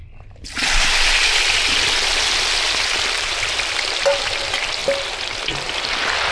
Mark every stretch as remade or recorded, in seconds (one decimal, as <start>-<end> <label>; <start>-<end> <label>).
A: 0.0-6.3 recorded